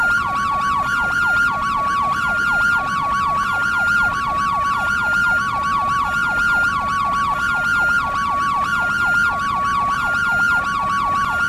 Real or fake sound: real